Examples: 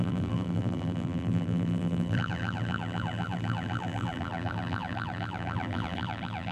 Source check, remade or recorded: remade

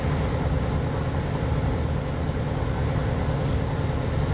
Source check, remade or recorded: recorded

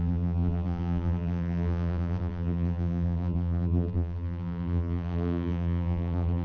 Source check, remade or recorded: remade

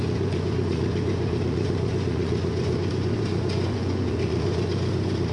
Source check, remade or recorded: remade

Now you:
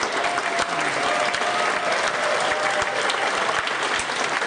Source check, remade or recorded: recorded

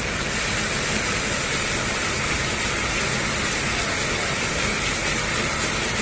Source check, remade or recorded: recorded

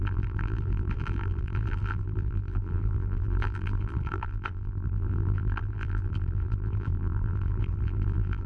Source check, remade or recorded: remade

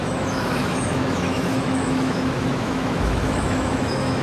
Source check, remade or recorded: remade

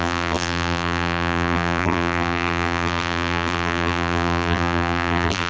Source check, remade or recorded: remade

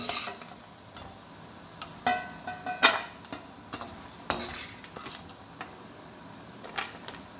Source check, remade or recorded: recorded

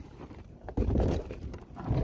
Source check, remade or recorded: remade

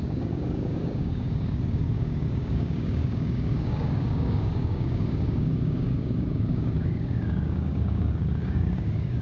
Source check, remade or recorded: remade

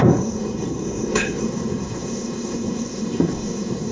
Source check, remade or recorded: remade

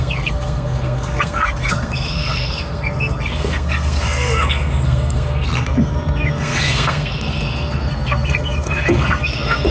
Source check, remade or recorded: remade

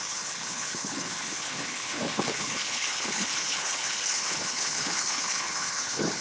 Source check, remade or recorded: remade